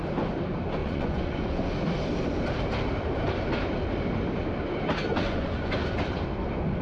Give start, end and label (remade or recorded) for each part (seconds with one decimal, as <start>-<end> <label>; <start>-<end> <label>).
0.0-0.8 recorded; 0.8-1.7 remade; 1.7-5.1 recorded; 5.1-5.7 remade; 5.7-6.8 recorded